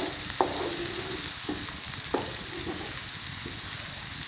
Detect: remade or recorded recorded